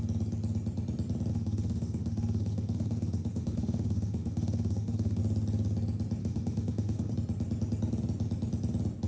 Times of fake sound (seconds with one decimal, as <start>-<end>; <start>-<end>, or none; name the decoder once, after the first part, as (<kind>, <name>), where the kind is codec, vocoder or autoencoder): 1.3-5.2 (autoencoder, DAC-VAE); 6.2-7.1